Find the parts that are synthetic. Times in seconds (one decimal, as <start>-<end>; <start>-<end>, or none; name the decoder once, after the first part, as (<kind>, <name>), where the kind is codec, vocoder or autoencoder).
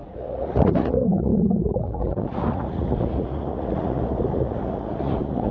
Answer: 0.0-5.5 (vocoder, Vocos)